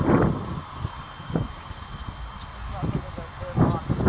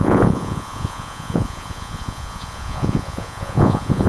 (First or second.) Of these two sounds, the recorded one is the first